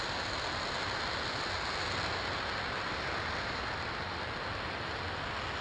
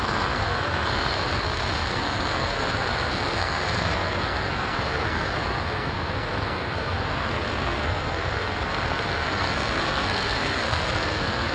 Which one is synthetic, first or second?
second